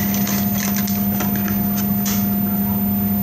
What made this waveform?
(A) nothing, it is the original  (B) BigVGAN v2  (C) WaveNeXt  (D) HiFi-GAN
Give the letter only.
A